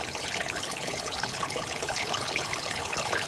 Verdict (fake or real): fake